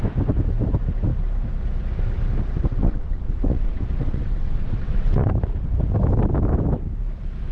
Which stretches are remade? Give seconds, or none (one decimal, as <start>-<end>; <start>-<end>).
2.6-5.3